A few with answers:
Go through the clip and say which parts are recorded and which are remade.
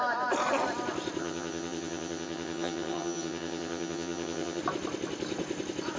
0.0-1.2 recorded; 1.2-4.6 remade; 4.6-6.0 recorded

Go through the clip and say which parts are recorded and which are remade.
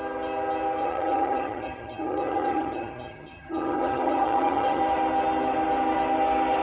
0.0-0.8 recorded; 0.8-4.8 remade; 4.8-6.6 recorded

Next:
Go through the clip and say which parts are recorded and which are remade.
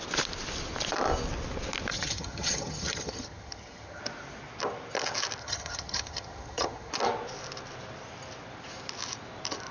0.0-1.9 recorded; 1.9-4.0 remade; 4.0-5.4 recorded; 5.4-6.9 remade; 6.9-9.7 recorded